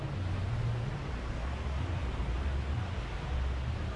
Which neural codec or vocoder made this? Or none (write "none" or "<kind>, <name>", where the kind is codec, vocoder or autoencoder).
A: none